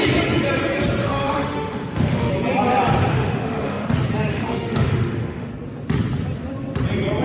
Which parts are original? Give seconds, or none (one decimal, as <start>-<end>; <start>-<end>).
0.0-1.0; 2.3-3.1; 3.9-4.3; 5.5-7.2